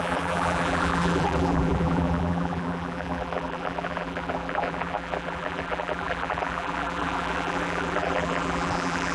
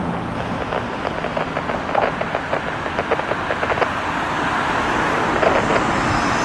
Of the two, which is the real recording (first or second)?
second